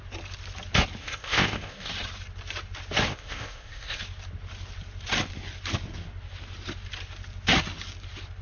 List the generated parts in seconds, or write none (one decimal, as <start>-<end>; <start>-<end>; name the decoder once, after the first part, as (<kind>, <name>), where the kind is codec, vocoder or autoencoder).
1.0-1.9 (codec, ZipCodec); 3.1-4.0